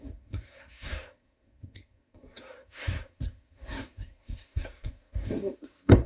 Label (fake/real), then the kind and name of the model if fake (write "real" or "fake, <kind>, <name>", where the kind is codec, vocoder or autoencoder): fake, codec, SNAC